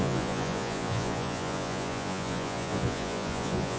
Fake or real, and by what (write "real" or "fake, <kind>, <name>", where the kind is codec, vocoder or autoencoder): fake, vocoder, Vocos